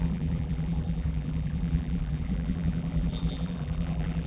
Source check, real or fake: fake